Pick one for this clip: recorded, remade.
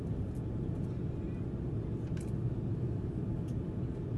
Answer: recorded